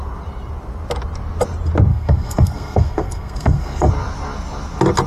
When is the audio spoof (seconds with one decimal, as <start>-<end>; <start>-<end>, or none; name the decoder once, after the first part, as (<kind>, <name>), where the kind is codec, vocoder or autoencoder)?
1.9-3.9 (codec, SNAC)